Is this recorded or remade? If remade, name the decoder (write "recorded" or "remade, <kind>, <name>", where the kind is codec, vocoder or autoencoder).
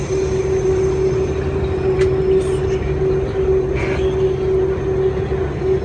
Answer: recorded